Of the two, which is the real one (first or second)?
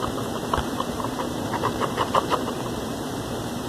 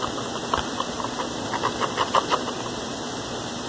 second